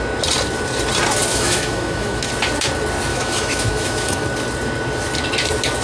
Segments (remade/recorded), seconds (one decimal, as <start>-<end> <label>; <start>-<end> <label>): 0.0-1.3 recorded; 1.3-2.3 remade; 2.3-3.1 recorded; 3.1-4.2 remade; 4.2-5.8 recorded